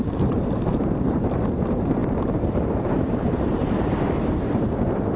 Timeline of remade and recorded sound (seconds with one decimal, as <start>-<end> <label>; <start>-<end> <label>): 0.0-5.2 remade